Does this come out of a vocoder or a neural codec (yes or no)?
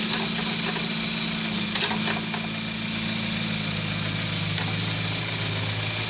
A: no